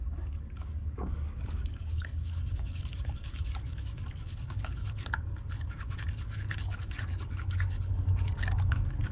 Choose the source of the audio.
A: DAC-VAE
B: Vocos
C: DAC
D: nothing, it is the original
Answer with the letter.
C